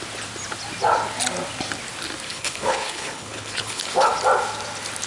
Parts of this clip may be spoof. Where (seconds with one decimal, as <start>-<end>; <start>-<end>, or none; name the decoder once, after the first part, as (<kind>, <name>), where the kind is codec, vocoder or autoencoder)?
2.3-4.1 (codec, HILCodec)